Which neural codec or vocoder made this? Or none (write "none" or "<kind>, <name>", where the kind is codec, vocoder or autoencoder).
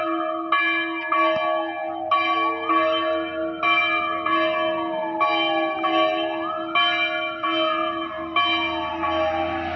none